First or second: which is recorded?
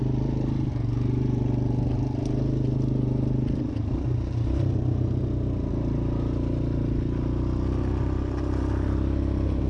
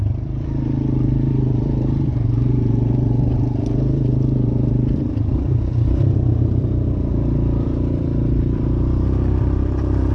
first